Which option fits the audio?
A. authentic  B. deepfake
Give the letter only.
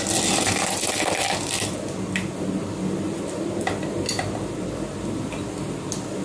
A